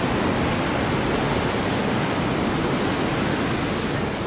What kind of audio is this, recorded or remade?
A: recorded